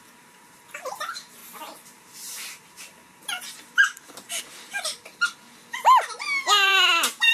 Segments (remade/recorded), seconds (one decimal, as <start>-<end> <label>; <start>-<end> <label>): 0.0-5.1 remade; 5.1-6.2 recorded; 6.2-7.3 remade